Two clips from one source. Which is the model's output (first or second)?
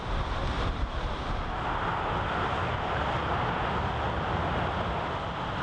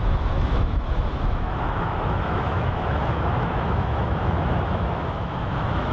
second